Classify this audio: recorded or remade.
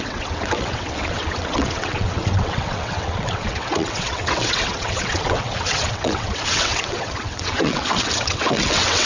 remade